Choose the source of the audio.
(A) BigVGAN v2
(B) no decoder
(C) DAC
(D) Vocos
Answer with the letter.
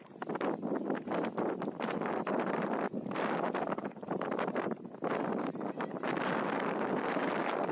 B